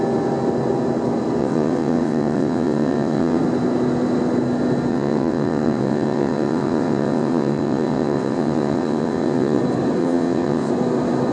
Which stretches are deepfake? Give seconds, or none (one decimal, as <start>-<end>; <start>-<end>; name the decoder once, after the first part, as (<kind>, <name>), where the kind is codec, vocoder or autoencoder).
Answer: 1.4-3.4 (vocoder, WaveNeXt); 4.9-9.6; 10.0-10.7